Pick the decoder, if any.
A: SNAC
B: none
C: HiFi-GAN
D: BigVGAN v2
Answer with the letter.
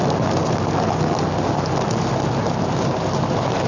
B